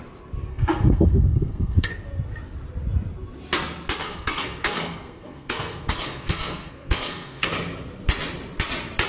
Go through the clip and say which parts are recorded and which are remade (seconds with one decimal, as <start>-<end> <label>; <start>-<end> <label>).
0.0-0.5 recorded; 0.5-1.9 remade; 1.9-4.0 recorded; 4.0-7.5 remade; 7.5-9.1 recorded